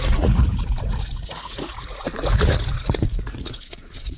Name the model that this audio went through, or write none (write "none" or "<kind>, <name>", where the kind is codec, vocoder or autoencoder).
vocoder, Vocos